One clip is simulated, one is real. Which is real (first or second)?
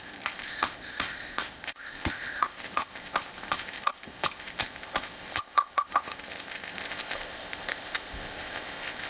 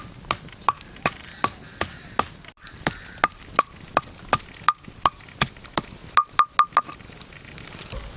second